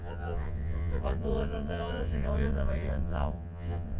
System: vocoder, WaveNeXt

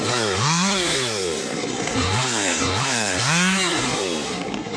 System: codec, SNAC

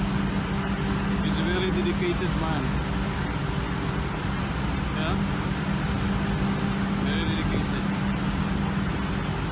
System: none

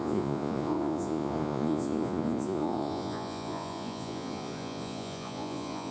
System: vocoder, Vocos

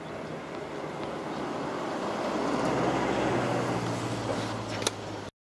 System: none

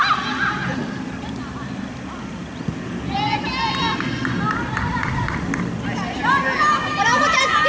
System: none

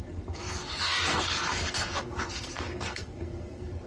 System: codec, SNAC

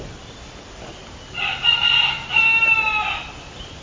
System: none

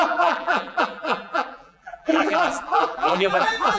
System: vocoder, BigVGAN v2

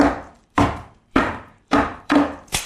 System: vocoder, BigVGAN v2